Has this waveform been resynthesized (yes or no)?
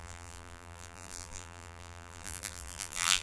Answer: yes